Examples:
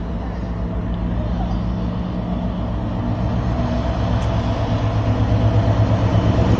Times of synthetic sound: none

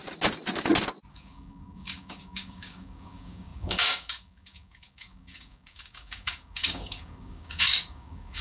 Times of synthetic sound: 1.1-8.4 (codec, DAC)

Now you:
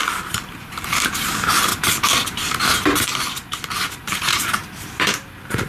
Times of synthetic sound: 0.0-1.7 (vocoder, BigVGAN v2); 4.0-5.7

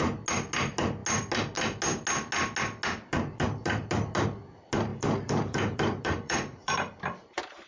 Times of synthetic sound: 4.9-7.7 (vocoder, BigVGAN v2)